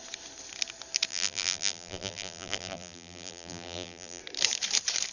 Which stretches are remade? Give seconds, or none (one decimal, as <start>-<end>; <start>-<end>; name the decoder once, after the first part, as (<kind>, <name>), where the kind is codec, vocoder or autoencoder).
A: 1.1-4.2 (vocoder, BigVGAN v2)